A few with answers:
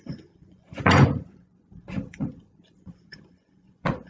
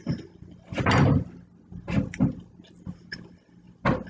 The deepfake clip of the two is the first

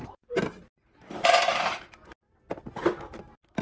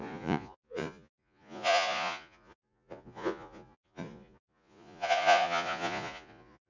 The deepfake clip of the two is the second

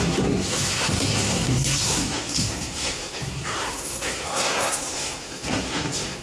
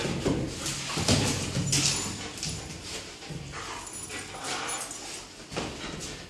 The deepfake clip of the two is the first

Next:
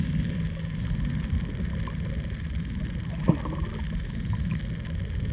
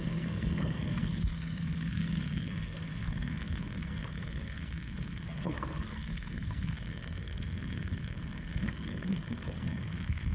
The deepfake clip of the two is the second